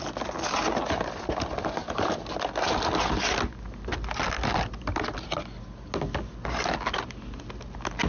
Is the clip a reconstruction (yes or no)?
no